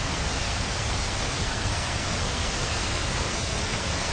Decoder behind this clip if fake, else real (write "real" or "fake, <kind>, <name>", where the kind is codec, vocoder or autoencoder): fake, codec, SNAC